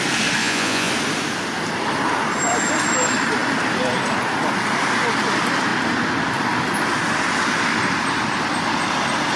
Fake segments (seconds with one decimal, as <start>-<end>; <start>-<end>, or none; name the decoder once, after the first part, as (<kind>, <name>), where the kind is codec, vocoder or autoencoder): 0.4-0.9 (vocoder, Vocos)